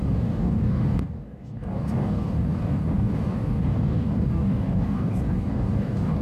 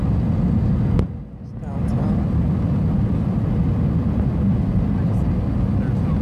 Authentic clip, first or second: second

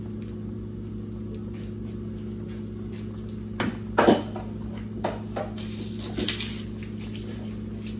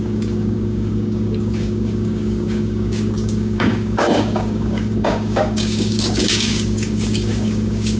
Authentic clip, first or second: first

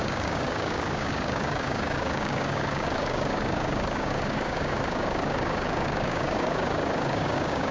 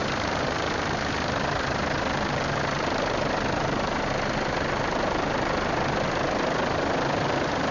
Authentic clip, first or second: second